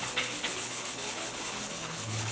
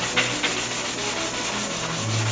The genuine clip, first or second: second